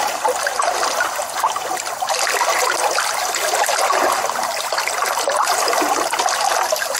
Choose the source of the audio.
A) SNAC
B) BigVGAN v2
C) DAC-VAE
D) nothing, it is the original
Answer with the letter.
D